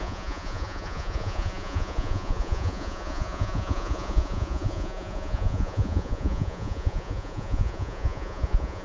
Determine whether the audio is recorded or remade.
remade